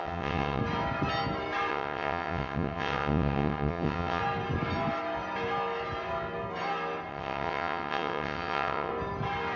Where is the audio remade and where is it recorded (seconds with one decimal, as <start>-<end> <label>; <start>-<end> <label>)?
0.0-0.6 remade; 0.6-1.7 recorded; 1.7-4.2 remade; 4.2-7.1 recorded; 7.1-8.9 remade; 8.9-9.6 recorded